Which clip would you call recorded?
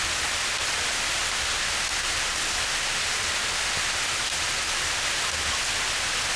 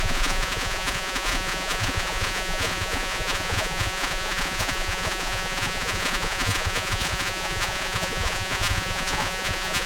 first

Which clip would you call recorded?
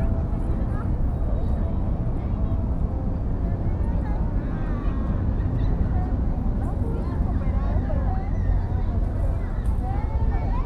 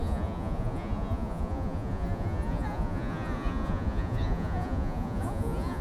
first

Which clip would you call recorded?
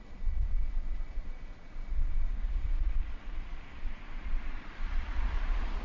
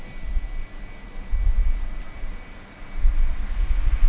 second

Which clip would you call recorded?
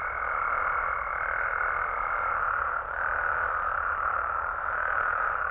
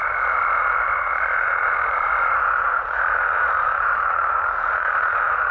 first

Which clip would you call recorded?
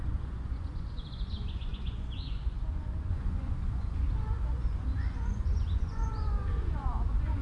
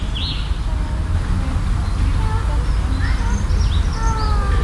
second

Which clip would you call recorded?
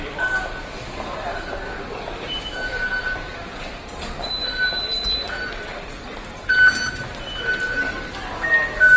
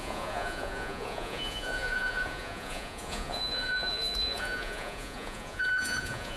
first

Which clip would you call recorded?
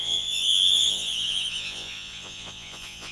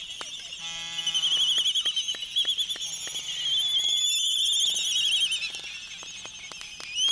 second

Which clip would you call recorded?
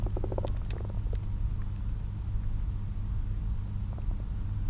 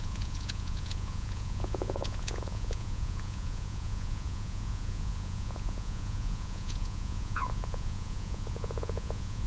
first